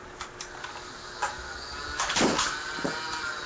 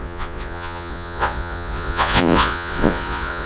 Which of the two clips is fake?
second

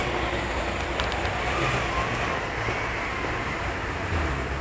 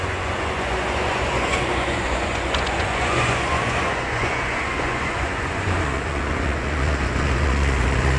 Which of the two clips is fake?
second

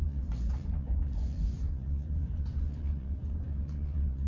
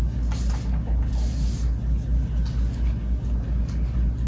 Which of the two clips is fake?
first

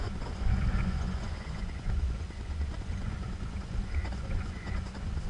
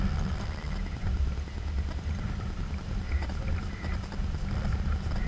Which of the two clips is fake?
first